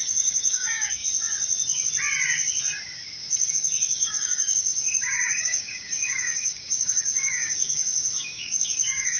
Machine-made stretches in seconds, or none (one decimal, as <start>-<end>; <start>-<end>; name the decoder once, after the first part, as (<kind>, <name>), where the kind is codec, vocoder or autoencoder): 0.0-1.0 (codec, DAC); 3.5-9.2

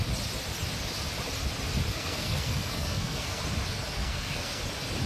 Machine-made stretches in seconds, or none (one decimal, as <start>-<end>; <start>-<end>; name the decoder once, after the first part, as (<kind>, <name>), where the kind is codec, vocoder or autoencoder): 1.9-3.4 (codec, SNAC); 4.0-4.6

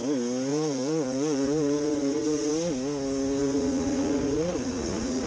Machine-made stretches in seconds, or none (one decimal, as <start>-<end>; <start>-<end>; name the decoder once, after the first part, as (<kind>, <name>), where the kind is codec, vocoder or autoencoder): 0.5-2.5 (vocoder, Vocos); 3.4-5.3

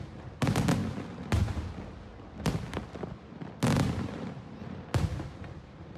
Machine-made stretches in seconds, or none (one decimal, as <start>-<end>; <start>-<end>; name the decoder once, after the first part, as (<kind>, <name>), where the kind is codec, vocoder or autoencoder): none

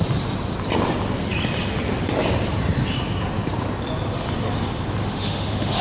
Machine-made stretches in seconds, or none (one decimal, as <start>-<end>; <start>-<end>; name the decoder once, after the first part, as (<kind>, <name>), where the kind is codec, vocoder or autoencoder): 5.0-5.8 (autoencoder, DAC-VAE)

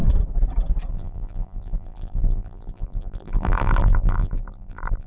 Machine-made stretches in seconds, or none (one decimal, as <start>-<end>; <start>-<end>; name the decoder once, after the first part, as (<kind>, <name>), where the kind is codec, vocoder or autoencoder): 0.9-5.1 (vocoder, BigVGAN v2)

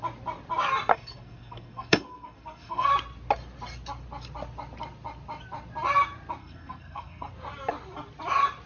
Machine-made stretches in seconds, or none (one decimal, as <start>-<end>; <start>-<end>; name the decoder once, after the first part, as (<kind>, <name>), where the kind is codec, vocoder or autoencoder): 0.9-2.9 (codec, SNAC); 6.4-7.3